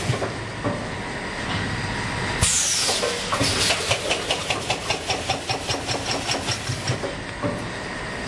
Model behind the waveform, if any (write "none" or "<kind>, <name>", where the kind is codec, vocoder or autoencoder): none